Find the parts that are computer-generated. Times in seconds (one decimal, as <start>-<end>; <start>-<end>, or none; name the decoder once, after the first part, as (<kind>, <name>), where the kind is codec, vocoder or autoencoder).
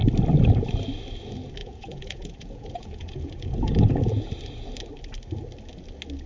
1.6-4.0 (vocoder, Vocos)